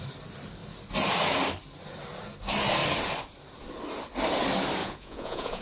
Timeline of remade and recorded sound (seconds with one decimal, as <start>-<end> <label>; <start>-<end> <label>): 0.0-4.8 recorded; 4.8-5.6 remade